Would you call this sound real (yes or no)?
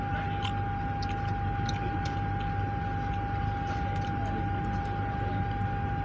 yes